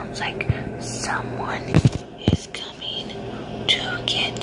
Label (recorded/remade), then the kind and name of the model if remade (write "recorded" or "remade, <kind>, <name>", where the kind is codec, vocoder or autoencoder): recorded